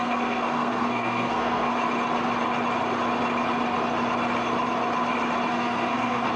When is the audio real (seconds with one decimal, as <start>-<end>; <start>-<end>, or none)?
1.7-5.5